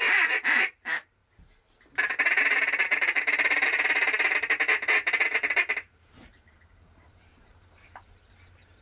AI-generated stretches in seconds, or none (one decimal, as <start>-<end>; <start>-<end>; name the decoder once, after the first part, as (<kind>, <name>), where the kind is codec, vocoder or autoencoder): 0.0-1.2 (vocoder, BigVGAN v2); 2.4-8.8